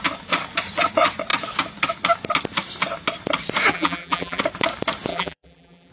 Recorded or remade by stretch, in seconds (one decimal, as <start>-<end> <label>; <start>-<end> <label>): 0.0-3.7 recorded; 3.7-4.4 remade; 4.4-5.1 recorded; 5.1-5.9 remade

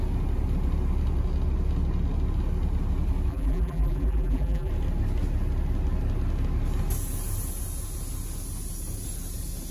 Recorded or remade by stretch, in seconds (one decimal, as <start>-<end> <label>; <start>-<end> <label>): 0.0-3.3 recorded; 3.3-4.7 remade; 4.7-9.7 recorded